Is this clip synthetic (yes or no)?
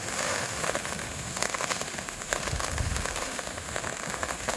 yes